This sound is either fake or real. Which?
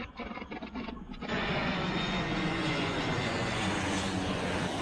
fake